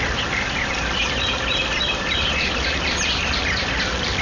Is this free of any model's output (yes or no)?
yes